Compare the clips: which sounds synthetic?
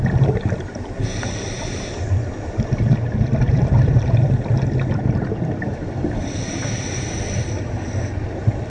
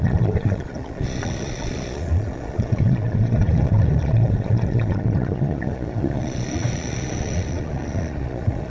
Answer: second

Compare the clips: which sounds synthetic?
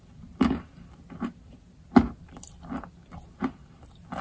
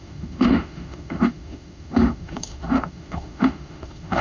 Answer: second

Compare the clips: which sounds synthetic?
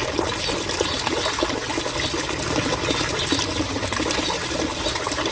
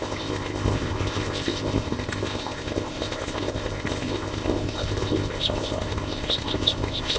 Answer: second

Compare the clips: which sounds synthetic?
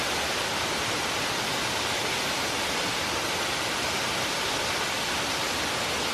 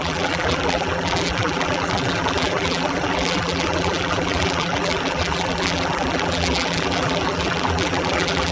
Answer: second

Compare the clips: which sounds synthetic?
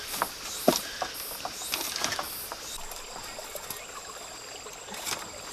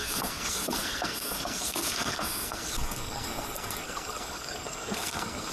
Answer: second